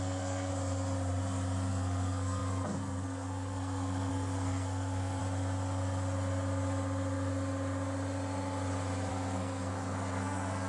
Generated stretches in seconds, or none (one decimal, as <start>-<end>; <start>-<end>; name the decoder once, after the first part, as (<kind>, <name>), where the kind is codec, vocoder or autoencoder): 0.0-0.5 (codec, SNAC); 1.7-5.2; 9.1-10.7